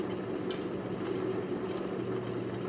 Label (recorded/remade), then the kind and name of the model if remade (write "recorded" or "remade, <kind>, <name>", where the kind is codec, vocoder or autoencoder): recorded